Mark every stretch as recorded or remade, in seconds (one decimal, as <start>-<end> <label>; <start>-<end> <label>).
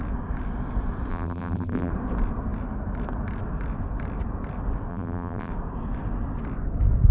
0.0-1.1 recorded; 1.1-1.9 remade; 1.9-4.9 recorded; 4.9-5.5 remade; 5.5-7.1 recorded